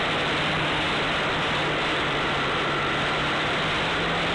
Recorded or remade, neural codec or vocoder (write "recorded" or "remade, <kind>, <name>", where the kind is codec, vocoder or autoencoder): remade, vocoder, BigVGAN v2